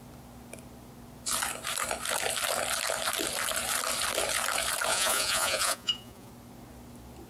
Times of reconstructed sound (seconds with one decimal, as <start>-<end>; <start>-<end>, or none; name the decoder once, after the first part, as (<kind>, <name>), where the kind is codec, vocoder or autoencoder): 4.9-6.3 (vocoder, Vocos)